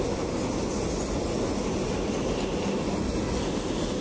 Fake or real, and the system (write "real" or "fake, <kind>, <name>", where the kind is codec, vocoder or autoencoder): real